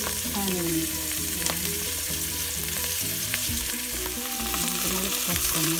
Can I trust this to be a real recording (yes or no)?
no